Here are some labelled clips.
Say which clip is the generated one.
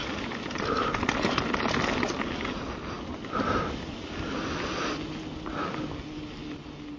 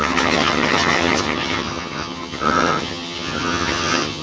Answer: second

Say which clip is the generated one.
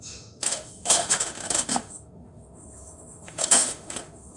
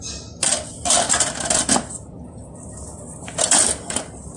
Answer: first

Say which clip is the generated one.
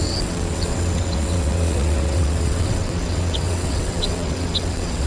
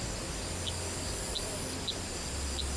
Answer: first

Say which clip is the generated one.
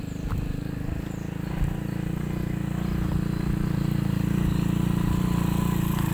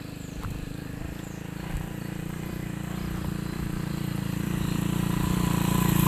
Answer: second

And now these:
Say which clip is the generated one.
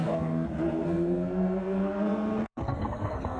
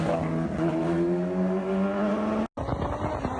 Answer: first